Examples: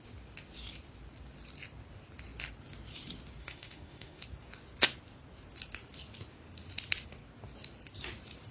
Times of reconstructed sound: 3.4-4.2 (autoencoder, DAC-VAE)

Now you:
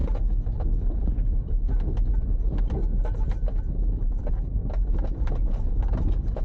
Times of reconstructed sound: none

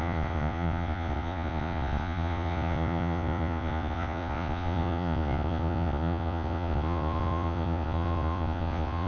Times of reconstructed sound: 0.0-9.1 (vocoder, Vocos)

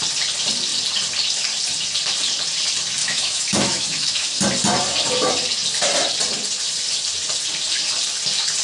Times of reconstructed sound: 3.0-4.4 (autoencoder, DAC-VAE)

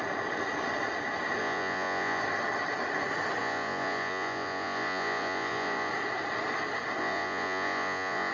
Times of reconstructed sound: 1.4-2.2 (vocoder, Vocos); 3.4-5.9; 7.0-8.3

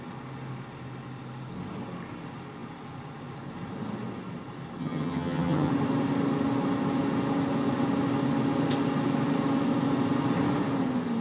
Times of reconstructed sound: 4.8-5.7 (vocoder, HiFi-GAN)